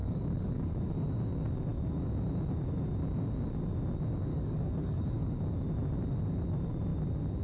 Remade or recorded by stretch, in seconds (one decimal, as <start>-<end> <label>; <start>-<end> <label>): 0.0-0.8 remade; 0.8-4.3 recorded; 4.3-5.3 remade; 5.3-7.4 recorded